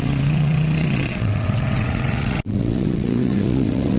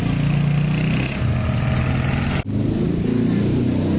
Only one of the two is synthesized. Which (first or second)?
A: first